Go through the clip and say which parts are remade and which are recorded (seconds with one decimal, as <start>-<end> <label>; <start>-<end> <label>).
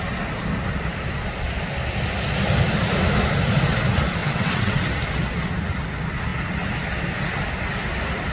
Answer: 0.0-4.2 recorded; 4.2-4.8 remade; 4.8-8.3 recorded